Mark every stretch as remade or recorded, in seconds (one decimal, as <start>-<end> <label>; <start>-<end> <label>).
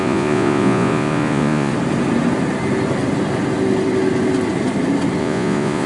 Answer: 0.0-1.7 remade; 1.7-5.2 recorded; 5.2-5.9 remade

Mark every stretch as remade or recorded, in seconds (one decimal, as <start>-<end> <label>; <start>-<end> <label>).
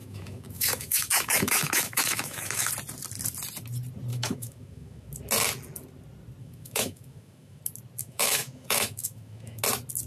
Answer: 0.0-2.7 remade; 2.7-4.1 recorded; 4.1-5.1 remade; 5.1-6.4 recorded; 6.4-7.6 remade; 7.6-8.0 recorded; 8.0-9.6 remade; 9.6-10.1 recorded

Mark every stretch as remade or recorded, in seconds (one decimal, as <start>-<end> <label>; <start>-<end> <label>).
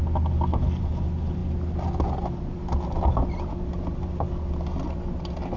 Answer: 0.0-5.6 recorded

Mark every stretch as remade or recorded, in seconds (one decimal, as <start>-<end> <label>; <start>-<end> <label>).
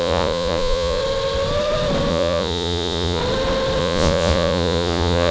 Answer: 0.0-1.0 remade; 1.0-2.1 recorded; 2.1-3.2 remade; 3.2-3.8 recorded; 3.8-5.3 remade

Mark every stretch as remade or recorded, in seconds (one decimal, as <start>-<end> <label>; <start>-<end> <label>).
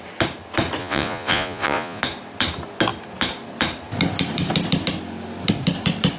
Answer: 0.0-0.8 recorded; 0.8-2.0 remade; 2.0-6.2 recorded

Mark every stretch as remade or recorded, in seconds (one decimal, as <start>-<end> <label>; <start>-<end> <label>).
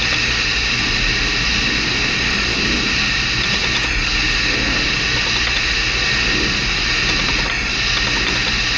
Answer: 0.0-8.8 recorded